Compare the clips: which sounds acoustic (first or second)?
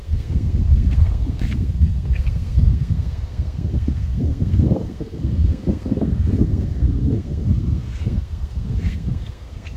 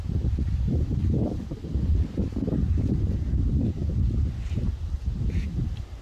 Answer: second